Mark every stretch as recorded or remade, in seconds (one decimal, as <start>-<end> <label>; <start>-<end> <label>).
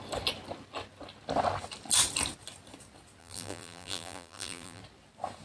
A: 0.0-3.2 recorded; 3.2-4.8 remade; 4.8-5.4 recorded